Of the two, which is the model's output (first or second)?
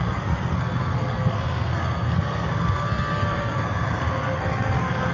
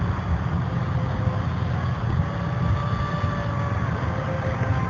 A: first